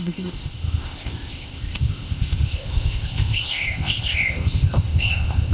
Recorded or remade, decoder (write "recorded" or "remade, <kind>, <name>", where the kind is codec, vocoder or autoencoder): remade, codec, ZipCodec